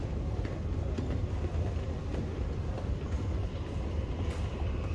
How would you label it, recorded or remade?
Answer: recorded